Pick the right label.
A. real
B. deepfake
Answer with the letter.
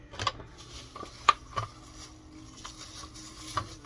A